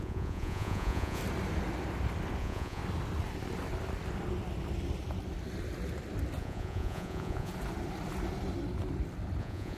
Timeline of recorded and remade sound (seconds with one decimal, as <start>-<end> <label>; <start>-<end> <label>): 0.0-1.2 remade; 1.2-2.4 recorded; 2.4-2.8 remade; 2.8-6.4 recorded; 6.4-7.5 remade; 7.5-9.4 recorded; 9.4-9.8 remade